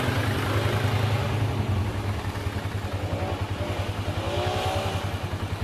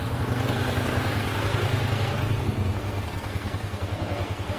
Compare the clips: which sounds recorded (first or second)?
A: first